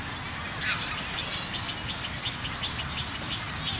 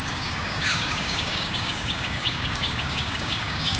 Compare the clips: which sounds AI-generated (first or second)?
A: second